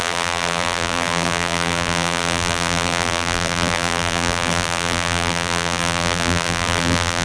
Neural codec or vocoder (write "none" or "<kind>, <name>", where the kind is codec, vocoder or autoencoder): vocoder, BigVGAN v2